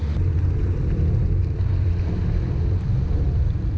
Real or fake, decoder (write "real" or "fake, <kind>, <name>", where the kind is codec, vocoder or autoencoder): fake, vocoder, BigVGAN v2